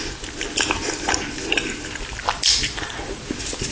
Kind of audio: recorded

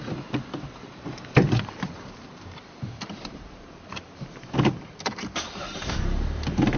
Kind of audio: remade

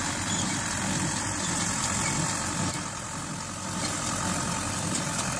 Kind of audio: remade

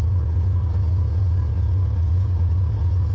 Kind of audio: recorded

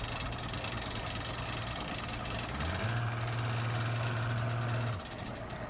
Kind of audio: recorded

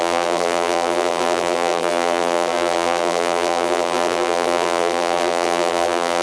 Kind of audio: remade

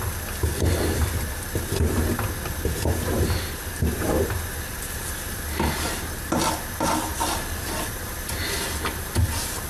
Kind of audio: recorded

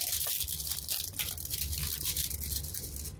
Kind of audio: recorded